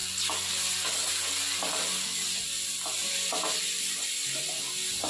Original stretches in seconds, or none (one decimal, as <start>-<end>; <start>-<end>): 0.0-5.1